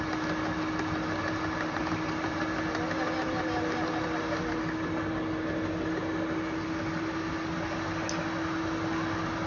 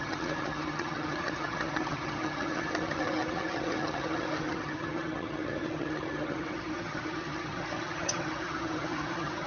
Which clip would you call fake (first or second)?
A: second